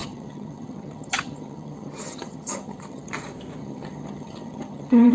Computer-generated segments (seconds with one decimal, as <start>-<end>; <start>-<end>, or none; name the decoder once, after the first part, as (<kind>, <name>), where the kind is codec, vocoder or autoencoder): 0.0-3.1 (vocoder, HiFi-GAN); 3.6-5.1